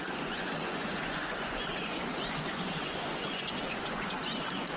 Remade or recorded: remade